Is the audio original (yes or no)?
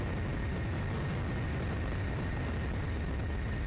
yes